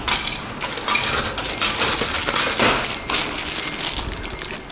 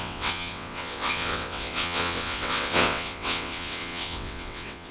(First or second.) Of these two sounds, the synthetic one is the second